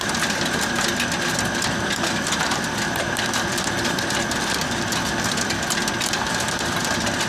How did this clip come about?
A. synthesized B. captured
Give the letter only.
A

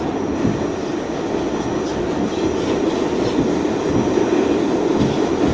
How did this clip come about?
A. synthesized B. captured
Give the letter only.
B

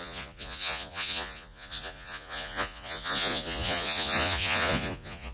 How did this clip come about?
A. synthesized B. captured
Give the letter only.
A